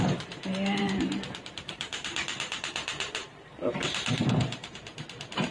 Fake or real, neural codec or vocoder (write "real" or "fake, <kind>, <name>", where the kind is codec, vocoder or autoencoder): fake, vocoder, BigVGAN v2